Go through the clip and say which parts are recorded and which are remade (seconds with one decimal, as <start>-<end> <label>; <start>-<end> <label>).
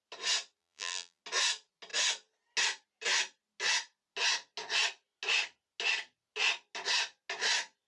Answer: 0.0-0.6 recorded; 0.6-1.2 remade; 1.2-7.9 recorded